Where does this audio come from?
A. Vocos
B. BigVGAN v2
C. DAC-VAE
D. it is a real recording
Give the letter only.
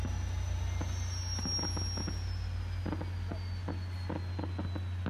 D